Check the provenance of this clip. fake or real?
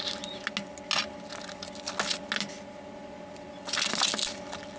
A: real